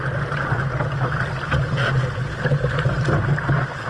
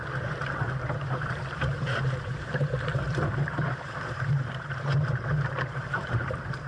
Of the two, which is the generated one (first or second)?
second